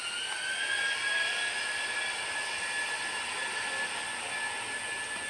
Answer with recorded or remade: recorded